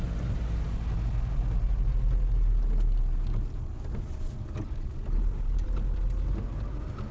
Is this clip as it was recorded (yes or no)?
yes